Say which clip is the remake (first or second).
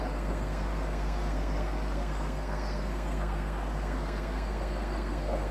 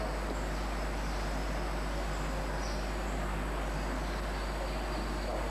first